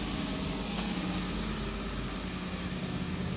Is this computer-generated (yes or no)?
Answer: no